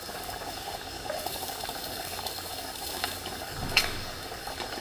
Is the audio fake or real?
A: fake